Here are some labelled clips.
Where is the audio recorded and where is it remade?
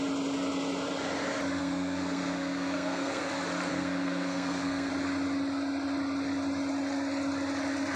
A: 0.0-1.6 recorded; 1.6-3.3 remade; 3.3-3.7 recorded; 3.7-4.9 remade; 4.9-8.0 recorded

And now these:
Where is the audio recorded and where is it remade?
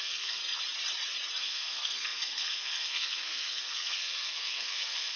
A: 0.0-0.4 remade; 0.4-1.4 recorded; 1.4-5.2 remade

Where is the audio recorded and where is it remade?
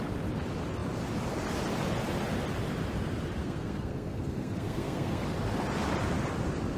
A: 0.0-3.4 recorded; 3.4-5.2 remade; 5.2-6.8 recorded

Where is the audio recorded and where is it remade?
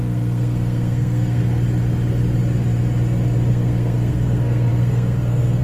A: 0.0-1.4 remade; 1.4-3.5 recorded; 3.5-5.6 remade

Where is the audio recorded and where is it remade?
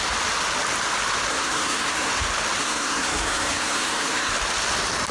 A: 0.0-1.3 recorded; 1.3-2.1 remade; 2.1-2.6 recorded; 2.6-4.3 remade; 4.3-5.1 recorded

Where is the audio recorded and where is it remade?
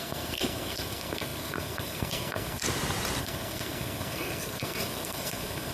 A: 0.0-2.6 remade; 2.6-3.2 recorded; 3.2-5.7 remade